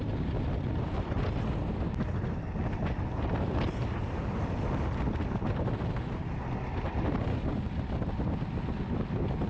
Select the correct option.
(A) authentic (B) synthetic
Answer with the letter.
A